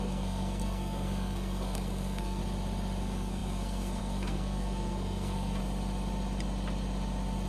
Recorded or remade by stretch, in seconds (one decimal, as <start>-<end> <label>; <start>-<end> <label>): 0.0-2.4 remade; 2.4-3.0 recorded; 3.0-5.6 remade; 5.6-7.5 recorded